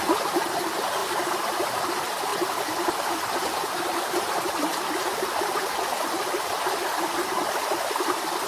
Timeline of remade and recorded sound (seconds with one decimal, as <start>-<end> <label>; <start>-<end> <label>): 0.0-1.0 recorded; 1.0-1.8 remade; 1.8-8.5 recorded